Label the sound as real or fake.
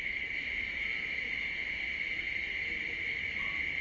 real